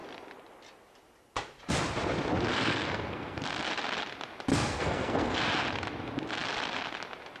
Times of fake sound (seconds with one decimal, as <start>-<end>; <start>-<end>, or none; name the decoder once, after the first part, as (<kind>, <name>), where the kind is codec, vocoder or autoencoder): 2.5-3.4 (codec, SNAC); 4.5-5.4

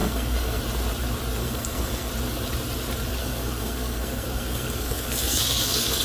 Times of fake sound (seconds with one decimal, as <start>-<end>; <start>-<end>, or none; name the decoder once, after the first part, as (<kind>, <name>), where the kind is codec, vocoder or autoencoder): 0.0-0.6 (codec, SNAC); 1.4-2.1; 3.2-6.0

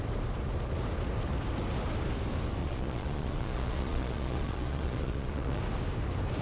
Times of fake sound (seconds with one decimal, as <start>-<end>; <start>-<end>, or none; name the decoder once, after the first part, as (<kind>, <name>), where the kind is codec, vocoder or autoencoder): 2.6-5.6 (vocoder, Vocos)

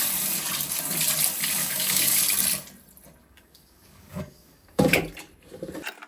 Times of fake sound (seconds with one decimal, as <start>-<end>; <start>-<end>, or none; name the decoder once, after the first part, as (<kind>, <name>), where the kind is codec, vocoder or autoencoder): 1.6-2.2 (codec, DAC); 3.2-5.0

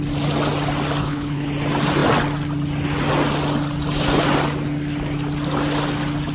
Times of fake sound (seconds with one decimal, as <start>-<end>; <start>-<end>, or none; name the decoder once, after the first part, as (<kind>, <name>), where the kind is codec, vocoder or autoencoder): 1.0-1.5 (codec, HILCodec)

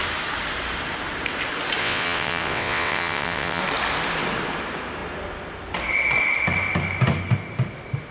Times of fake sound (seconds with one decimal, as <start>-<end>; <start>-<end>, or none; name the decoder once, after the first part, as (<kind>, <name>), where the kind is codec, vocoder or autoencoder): 1.8-3.6 (vocoder, WaveNeXt)

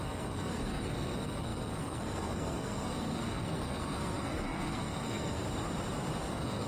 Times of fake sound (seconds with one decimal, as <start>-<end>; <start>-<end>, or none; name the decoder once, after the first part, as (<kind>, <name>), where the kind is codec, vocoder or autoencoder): 0.0-5.4 (codec, SNAC); 6.2-6.7